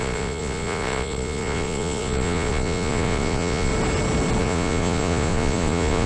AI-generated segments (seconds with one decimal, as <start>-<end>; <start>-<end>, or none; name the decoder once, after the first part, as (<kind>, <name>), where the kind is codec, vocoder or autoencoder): 0.0-3.7 (vocoder, Vocos); 4.4-6.1